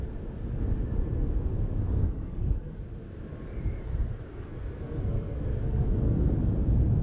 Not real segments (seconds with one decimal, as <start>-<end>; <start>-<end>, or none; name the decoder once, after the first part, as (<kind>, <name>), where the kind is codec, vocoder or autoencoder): 2.0-2.8 (codec, SNAC); 4.3-6.3